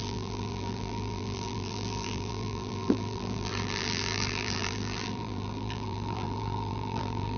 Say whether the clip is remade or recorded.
remade